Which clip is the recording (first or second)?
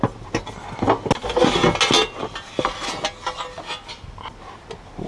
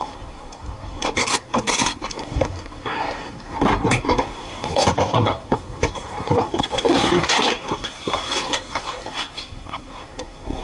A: first